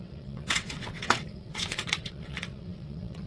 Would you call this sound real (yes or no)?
no